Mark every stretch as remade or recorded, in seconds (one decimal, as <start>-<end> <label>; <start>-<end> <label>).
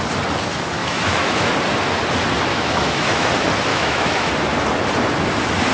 0.0-0.8 recorded; 0.8-1.5 remade; 1.5-2.5 recorded; 2.5-3.3 remade; 3.3-3.7 recorded; 3.7-4.3 remade; 4.3-5.7 recorded